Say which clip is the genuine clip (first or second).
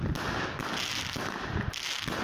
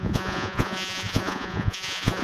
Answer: first